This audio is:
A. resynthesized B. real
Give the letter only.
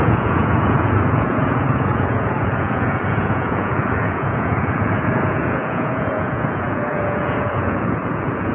A